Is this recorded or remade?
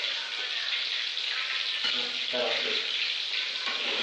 recorded